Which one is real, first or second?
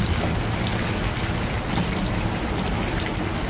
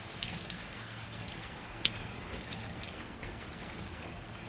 first